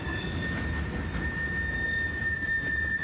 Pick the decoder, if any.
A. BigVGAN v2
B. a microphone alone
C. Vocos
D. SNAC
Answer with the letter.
B